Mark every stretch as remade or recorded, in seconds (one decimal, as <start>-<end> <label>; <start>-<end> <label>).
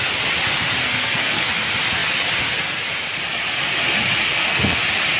0.0-0.8 recorded; 0.8-1.5 remade; 1.5-4.3 recorded; 4.3-4.8 remade; 4.8-5.2 recorded